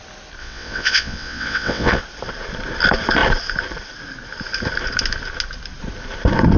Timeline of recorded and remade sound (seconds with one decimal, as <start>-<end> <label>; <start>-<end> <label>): 0.0-0.4 recorded; 0.4-2.0 remade; 2.0-6.6 recorded